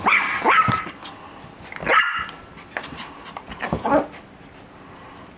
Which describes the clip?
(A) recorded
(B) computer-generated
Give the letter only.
A